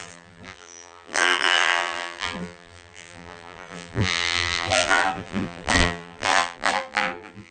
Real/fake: fake